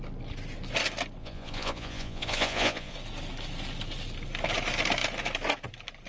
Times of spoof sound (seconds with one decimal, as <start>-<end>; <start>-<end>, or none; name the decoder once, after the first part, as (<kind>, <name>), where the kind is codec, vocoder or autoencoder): 1.2-2.9 (vocoder, Vocos)